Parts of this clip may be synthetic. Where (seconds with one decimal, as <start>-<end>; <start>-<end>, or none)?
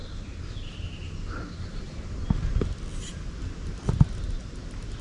none